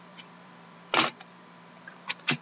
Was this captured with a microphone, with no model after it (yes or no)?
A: no